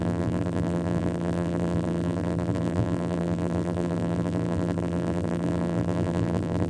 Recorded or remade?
remade